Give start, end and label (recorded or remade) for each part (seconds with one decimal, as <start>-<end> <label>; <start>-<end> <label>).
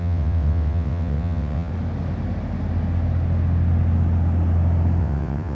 0.0-1.7 remade; 1.7-5.0 recorded; 5.0-5.5 remade